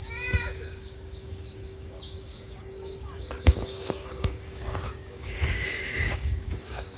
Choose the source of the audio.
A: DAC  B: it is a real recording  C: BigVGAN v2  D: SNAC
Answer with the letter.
A